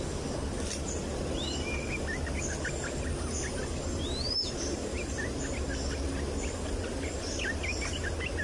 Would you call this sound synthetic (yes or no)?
no